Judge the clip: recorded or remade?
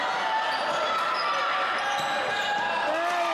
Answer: recorded